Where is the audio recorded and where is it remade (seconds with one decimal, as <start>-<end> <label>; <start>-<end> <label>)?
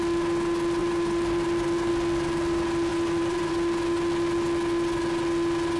0.0-0.8 recorded; 0.8-1.9 remade; 1.9-2.9 recorded; 2.9-3.5 remade; 3.5-5.8 recorded